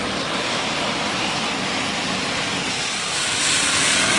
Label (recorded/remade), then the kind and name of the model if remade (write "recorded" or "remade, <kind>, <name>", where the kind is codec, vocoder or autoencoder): recorded